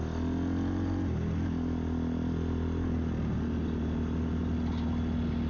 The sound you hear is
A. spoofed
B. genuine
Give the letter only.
B